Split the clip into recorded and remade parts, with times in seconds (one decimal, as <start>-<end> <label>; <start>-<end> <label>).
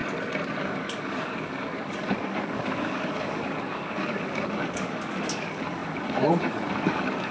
0.0-0.6 recorded; 0.6-7.3 remade